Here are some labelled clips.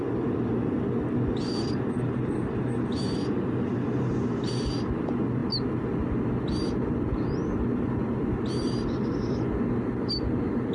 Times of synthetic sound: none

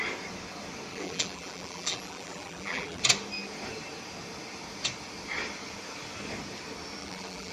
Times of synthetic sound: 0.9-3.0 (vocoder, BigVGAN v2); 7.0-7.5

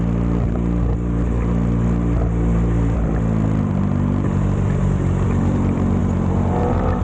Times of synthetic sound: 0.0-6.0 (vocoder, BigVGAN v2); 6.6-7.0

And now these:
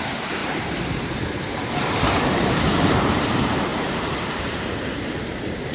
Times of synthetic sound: 0.0-5.7 (vocoder, BigVGAN v2)

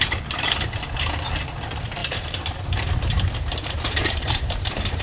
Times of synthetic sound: 2.0-5.0 (vocoder, BigVGAN v2)